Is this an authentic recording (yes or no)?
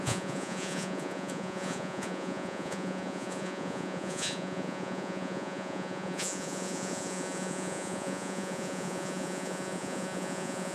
no